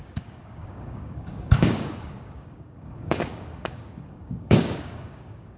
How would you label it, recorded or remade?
remade